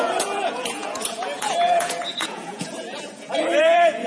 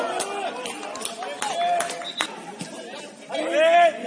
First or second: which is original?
second